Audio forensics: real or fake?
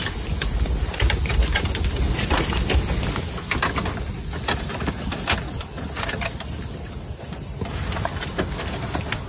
real